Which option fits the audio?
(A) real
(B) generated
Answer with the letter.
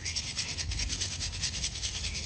B